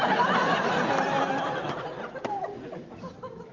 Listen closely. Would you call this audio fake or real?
real